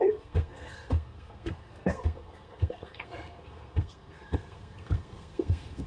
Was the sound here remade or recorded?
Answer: remade